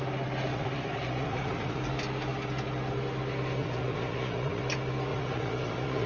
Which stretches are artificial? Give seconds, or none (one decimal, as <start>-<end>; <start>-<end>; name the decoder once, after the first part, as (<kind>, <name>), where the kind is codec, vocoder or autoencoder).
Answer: 0.5-1.8 (vocoder, Vocos); 3.6-4.6; 5.1-6.1